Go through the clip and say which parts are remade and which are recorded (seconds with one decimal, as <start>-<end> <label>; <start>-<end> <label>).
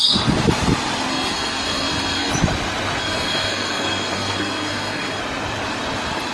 0.0-1.1 recorded; 1.1-2.3 remade; 2.3-3.0 recorded; 3.0-5.2 remade; 5.2-6.3 recorded